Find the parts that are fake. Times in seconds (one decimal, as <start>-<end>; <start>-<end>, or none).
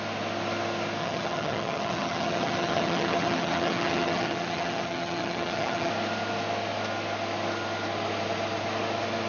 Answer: 1.0-5.9